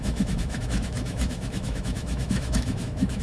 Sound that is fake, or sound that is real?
fake